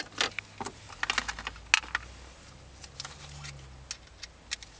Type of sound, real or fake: real